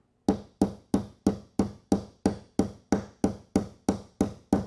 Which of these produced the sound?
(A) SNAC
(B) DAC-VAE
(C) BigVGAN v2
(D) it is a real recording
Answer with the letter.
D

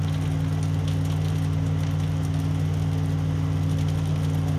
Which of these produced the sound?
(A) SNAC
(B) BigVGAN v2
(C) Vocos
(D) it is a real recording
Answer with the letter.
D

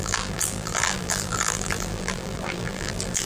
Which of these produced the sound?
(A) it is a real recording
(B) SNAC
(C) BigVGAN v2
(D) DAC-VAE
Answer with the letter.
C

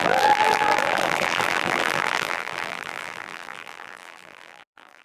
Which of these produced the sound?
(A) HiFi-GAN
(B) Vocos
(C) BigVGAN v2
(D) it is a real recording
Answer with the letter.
C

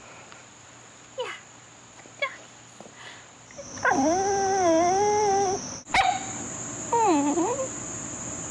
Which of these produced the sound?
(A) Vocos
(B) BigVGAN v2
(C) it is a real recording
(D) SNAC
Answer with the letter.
B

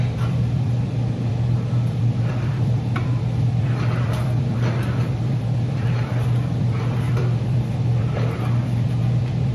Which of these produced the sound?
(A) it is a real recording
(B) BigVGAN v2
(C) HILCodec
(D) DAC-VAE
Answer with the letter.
B